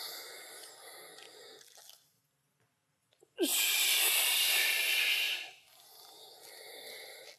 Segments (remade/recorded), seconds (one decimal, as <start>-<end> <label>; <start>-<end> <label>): 0.0-7.4 recorded